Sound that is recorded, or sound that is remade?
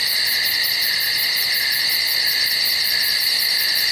recorded